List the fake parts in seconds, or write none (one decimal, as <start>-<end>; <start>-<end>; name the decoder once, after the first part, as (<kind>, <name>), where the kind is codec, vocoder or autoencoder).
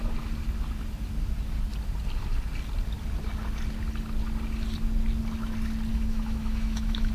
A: 5.9-7.1 (autoencoder, DAC-VAE)